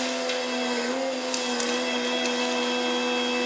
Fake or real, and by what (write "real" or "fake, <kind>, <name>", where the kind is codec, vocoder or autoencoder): real